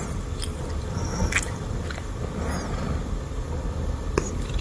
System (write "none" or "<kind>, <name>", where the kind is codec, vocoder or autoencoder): none